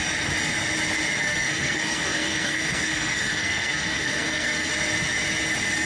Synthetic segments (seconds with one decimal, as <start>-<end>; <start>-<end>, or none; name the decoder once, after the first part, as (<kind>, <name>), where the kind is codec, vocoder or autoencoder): 1.2-4.7 (codec, SNAC)